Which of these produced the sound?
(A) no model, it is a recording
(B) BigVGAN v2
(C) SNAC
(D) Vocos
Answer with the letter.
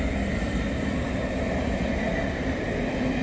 A